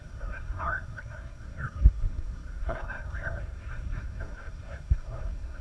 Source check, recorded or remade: remade